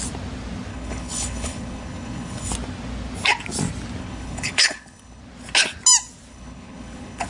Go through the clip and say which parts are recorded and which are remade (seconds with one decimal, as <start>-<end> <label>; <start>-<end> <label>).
0.0-0.7 recorded; 0.7-2.5 remade; 2.5-4.0 recorded; 4.0-5.2 remade; 5.2-6.3 recorded; 6.3-7.3 remade